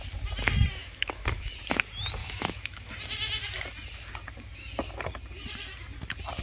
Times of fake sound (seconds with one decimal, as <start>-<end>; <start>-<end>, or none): 0.8-1.5; 2.2-2.9